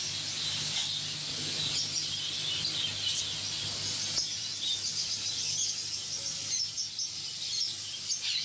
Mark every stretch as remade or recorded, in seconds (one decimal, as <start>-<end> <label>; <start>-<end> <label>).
0.0-8.4 recorded

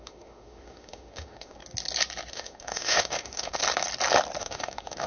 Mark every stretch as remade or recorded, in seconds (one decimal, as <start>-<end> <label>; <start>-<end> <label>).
0.0-1.6 remade; 1.6-2.3 recorded; 2.3-3.6 remade; 3.6-4.4 recorded; 4.4-5.1 remade

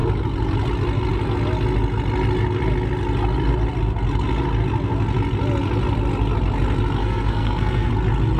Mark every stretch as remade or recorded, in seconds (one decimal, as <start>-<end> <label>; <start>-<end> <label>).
0.0-7.0 recorded; 7.0-7.9 remade; 7.9-8.4 recorded

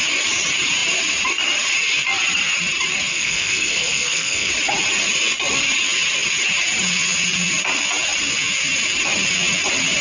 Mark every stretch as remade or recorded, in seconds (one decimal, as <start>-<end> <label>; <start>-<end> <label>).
0.0-3.1 recorded; 3.1-4.5 remade; 4.5-10.0 recorded